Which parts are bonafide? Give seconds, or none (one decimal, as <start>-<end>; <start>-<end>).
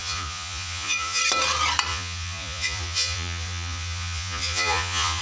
1.2-1.9